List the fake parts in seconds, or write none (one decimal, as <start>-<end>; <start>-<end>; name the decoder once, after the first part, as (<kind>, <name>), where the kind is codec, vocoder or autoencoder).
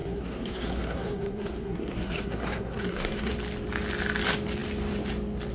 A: 0.0-3.3 (codec, SNAC)